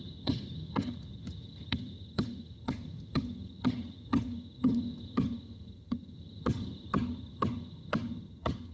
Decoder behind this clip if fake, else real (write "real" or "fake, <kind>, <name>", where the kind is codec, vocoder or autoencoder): fake, vocoder, HiFi-GAN